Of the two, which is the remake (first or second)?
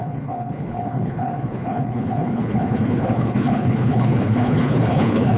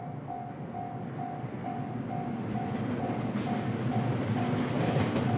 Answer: first